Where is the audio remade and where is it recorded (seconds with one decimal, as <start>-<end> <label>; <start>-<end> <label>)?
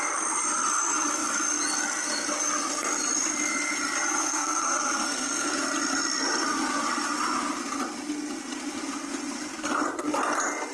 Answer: 0.0-4.2 recorded; 4.2-5.5 remade; 5.5-10.7 recorded